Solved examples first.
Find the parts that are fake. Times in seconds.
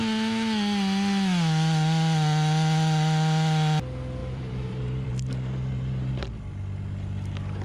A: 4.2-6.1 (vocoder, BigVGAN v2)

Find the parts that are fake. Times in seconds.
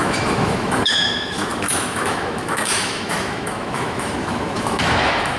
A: 0.0-5.4 (autoencoder, DAC-VAE)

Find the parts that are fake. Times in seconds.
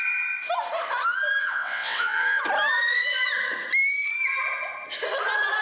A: 1.4-2.4 (vocoder, WaveNeXt)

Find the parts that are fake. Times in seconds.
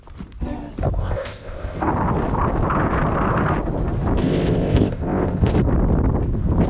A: 1.0-1.9 (codec, ZipCodec); 4.2-5.5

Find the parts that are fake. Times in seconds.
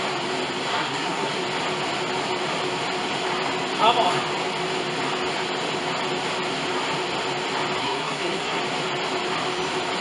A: 0.7-1.3 (codec, SNAC); 7.8-8.6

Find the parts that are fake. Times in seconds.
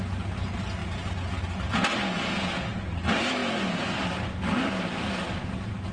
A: none